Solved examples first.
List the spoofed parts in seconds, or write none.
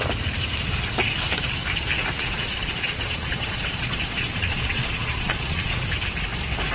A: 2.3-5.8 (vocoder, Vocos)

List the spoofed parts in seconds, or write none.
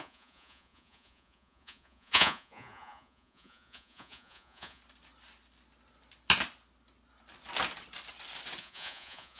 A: 0.0-4.8 (vocoder, Vocos); 8.6-9.4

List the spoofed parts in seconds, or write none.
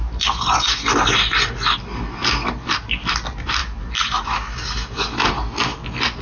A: none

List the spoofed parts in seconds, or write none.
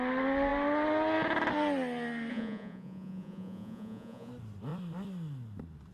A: 2.3-4.3 (vocoder, Vocos)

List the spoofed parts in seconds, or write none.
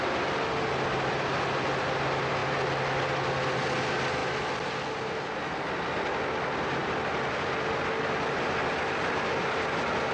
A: none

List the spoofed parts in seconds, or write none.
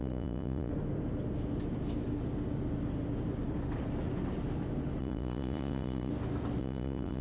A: 0.0-0.7 (vocoder, Vocos); 5.0-6.1; 6.6-7.2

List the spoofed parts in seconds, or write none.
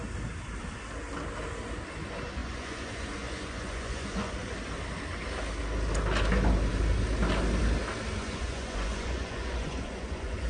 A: 2.4-4.3 (vocoder, Vocos); 8.2-10.5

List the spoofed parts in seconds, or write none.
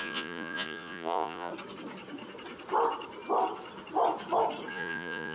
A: 0.0-1.5 (vocoder, Vocos); 4.7-5.3